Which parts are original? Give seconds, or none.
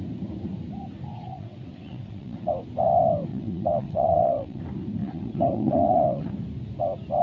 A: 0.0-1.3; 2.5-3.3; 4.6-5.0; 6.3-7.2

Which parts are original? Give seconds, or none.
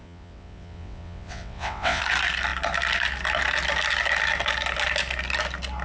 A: 2.0-5.8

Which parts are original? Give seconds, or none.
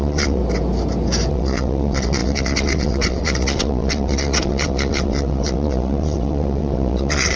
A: 0.4-1.3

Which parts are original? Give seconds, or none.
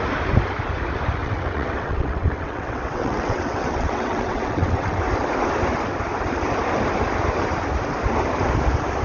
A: 0.0-1.2; 5.0-9.0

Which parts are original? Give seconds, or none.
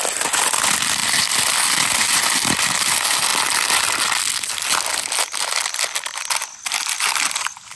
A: 0.0-7.8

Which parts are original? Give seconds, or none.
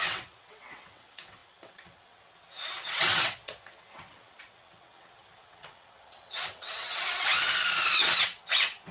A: 7.3-7.9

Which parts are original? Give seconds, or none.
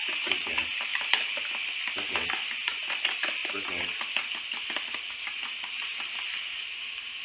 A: 0.0-7.2